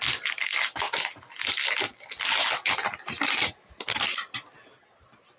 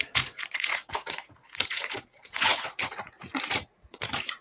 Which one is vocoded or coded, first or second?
second